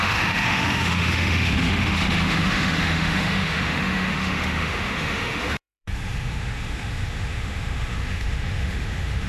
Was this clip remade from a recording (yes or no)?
yes